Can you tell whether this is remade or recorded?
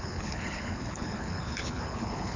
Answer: remade